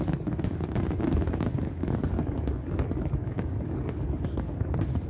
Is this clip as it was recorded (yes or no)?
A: no